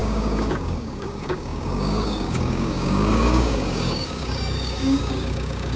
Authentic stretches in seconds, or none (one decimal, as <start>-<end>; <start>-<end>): none